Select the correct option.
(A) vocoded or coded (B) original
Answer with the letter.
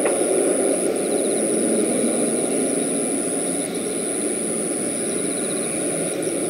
B